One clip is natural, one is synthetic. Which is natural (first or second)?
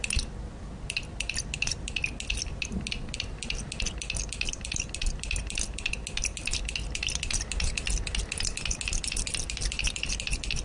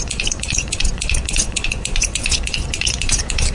first